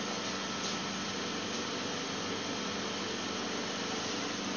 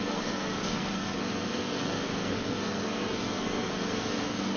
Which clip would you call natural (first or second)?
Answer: first